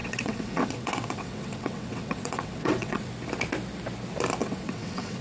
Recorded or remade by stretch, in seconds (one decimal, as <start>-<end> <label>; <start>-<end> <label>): 0.0-3.1 remade; 3.1-4.4 recorded; 4.4-5.2 remade